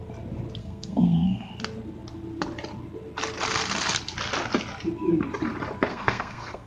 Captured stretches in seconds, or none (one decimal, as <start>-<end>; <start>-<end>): 0.0-0.6; 1.5-5.9